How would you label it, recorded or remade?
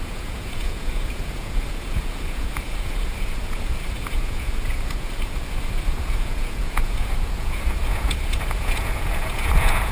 remade